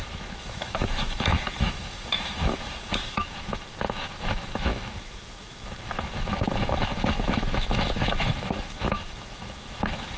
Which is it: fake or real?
fake